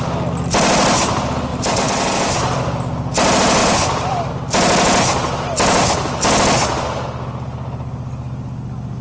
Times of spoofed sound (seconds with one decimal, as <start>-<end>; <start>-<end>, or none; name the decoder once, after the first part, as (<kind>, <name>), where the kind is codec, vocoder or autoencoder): 1.5-2.6 (vocoder, BigVGAN v2)